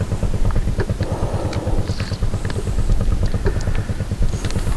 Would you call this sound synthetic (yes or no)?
no